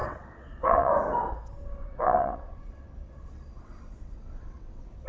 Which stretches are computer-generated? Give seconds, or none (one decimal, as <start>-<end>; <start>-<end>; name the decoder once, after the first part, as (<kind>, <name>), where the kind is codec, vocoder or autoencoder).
0.0-0.9 (vocoder, WaveNeXt); 1.8-5.1